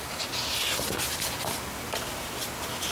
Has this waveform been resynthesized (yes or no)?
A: no